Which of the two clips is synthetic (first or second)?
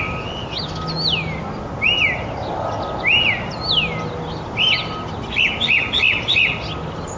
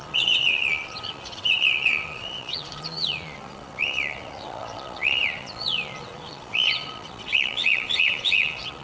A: second